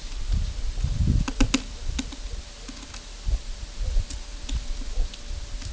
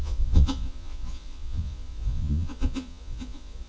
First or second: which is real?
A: first